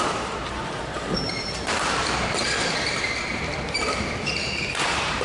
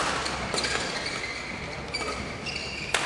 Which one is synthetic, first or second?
first